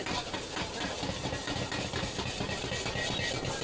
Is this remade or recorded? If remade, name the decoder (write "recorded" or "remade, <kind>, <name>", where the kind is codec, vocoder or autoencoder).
recorded